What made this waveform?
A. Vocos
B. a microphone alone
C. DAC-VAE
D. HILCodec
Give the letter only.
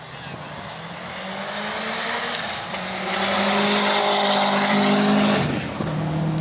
B